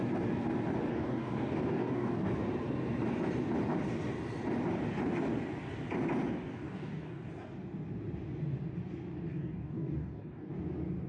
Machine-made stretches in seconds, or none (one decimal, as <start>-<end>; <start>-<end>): 0.9-2.3; 6.5-7.3; 9.3-10.5